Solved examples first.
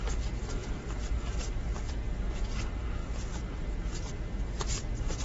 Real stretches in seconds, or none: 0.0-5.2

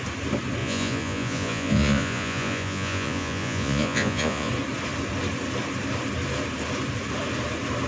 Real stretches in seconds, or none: 0.0-0.6; 4.5-7.9

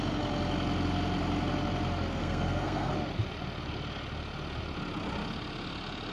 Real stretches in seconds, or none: 0.0-2.2; 2.9-6.1

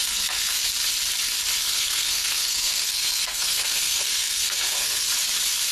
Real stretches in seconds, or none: 0.6-1.7; 5.1-5.7

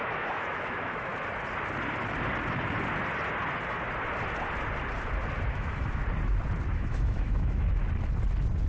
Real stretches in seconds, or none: 1.1-5.5; 6.0-6.7; 7.8-8.7

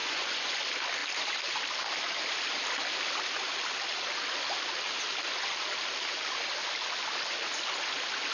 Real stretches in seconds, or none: 0.6-8.3